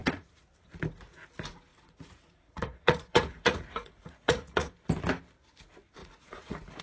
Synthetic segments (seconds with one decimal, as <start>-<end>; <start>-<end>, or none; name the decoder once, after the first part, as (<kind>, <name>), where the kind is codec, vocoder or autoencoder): 0.0-0.5 (vocoder, Vocos); 1.7-4.7; 6.0-6.8